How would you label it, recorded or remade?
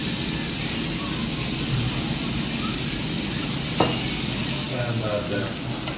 recorded